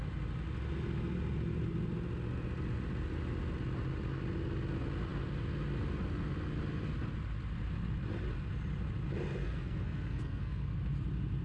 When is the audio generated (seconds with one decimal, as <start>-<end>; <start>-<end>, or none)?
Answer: 9.4-10.8

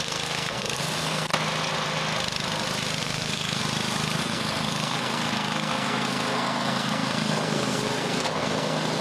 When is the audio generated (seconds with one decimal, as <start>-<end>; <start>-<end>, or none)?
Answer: 0.0-1.3; 3.0-3.6; 4.2-9.0

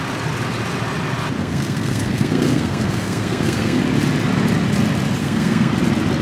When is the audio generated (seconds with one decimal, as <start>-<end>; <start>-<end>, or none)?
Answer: 1.4-3.8; 5.2-5.7

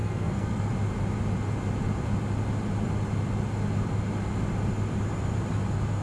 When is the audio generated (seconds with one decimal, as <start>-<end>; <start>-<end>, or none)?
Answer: 0.0-0.7

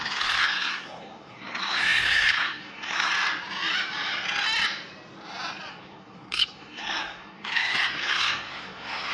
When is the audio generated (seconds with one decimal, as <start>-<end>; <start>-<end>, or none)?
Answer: 0.0-3.1; 5.7-9.1

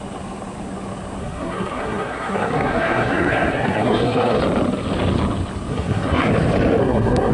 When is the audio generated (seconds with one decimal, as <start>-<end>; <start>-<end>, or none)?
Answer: 1.2-4.4; 5.7-6.3; 6.8-7.3

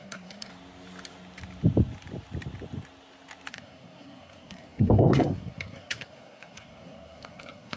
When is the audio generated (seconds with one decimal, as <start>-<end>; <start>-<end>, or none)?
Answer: 0.0-0.5; 3.5-7.8